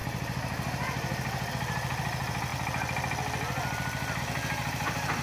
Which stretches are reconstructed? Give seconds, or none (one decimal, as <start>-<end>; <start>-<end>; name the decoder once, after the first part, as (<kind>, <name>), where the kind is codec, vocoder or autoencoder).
none